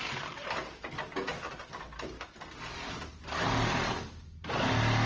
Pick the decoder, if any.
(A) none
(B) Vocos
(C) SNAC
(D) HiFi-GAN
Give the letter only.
A